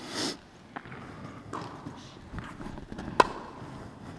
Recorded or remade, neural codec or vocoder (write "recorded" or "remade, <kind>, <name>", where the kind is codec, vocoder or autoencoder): recorded